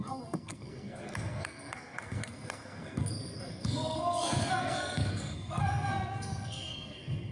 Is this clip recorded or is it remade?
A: remade